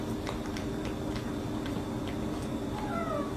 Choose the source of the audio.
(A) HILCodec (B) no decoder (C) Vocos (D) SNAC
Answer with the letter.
B